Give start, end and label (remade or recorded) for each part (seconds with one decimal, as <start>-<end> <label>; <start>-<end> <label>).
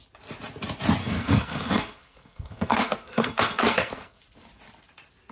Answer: 0.0-1.0 recorded; 1.0-4.2 remade; 4.2-5.3 recorded